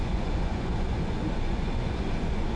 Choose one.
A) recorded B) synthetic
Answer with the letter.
B